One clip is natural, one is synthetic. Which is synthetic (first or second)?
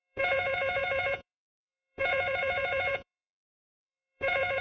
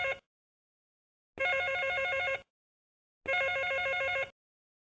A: first